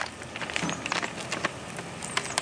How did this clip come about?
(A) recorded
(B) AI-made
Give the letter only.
A